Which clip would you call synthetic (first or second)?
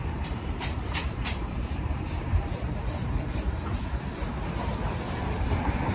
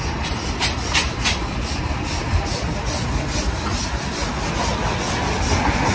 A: first